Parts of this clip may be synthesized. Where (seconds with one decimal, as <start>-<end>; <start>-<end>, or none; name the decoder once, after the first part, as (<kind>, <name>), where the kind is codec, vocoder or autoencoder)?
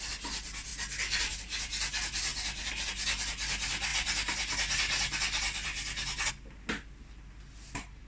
none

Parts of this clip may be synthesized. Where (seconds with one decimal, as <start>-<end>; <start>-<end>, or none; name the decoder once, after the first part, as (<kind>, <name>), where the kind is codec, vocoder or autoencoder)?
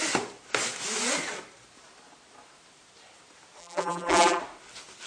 3.6-4.4 (vocoder, BigVGAN v2)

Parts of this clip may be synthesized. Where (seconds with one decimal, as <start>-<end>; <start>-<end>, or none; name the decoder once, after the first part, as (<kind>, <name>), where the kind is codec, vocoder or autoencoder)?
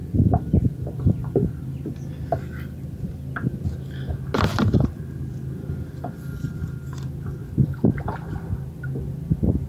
0.0-3.1 (vocoder, BigVGAN v2); 4.5-8.4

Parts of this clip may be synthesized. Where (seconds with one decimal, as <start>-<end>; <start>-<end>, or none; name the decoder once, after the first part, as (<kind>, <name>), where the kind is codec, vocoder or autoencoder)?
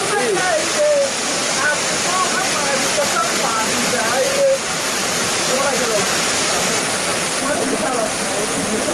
3.2-6.2 (vocoder, BigVGAN v2)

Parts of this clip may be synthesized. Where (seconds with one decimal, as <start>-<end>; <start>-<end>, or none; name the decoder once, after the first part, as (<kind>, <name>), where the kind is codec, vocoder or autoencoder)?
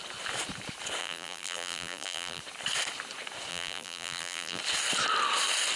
1.0-2.4 (vocoder, BigVGAN v2); 3.5-4.6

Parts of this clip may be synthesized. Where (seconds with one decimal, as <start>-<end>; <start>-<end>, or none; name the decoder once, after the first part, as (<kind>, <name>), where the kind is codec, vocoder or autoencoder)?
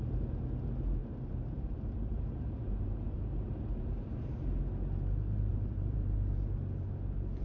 1.0-4.6 (vocoder, BigVGAN v2); 5.5-7.4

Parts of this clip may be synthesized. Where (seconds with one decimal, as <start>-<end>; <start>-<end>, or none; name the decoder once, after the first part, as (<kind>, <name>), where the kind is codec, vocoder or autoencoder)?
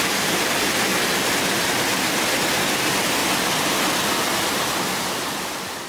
0.9-2.2 (vocoder, BigVGAN v2)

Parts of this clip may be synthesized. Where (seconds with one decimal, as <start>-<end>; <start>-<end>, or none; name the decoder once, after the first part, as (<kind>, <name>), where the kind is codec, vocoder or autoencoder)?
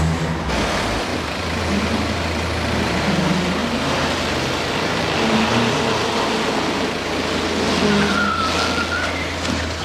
1.1-3.1 (vocoder, BigVGAN v2)